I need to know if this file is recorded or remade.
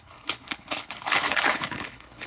remade